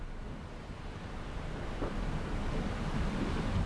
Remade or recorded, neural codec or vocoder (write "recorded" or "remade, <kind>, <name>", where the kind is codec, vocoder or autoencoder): remade, vocoder, BigVGAN v2